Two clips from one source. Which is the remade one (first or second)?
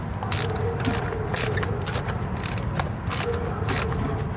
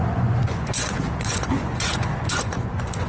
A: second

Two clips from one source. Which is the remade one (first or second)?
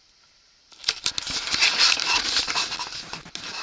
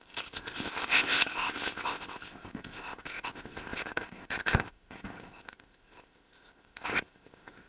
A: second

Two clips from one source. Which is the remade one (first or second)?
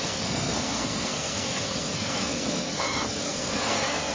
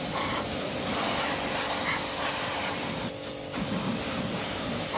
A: first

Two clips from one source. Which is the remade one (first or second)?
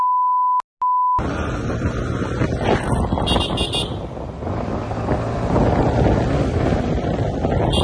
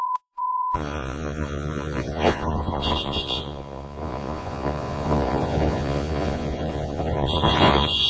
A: second